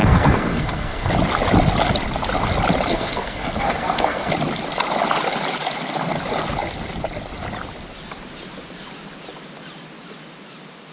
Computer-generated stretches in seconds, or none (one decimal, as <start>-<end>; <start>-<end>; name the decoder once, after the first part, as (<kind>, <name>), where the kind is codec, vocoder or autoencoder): 0.0-1.1 (codec, SNAC); 2.9-4.3